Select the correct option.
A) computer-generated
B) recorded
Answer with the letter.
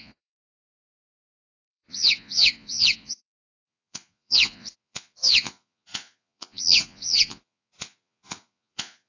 A